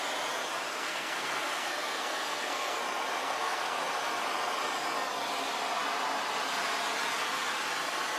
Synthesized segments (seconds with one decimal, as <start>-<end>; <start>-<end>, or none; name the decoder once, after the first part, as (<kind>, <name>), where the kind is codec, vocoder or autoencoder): 0.7-2.8 (codec, SNAC); 3.2-3.8